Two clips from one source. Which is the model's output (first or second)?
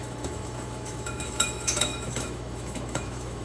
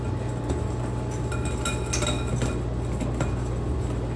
first